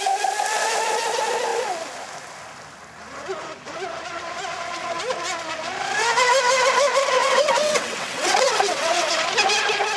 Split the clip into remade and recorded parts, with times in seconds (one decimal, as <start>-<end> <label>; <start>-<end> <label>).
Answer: 0.0-7.2 recorded; 7.2-9.1 remade; 9.1-10.0 recorded